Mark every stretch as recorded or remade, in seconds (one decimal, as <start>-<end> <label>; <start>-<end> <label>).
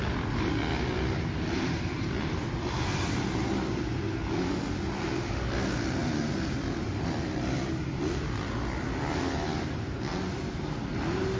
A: 0.0-11.4 recorded